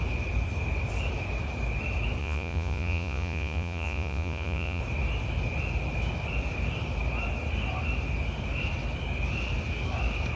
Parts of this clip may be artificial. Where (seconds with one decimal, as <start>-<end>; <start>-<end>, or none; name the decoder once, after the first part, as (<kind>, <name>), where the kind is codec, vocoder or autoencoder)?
2.2-4.8 (vocoder, Vocos)